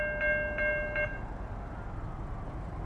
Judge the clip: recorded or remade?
recorded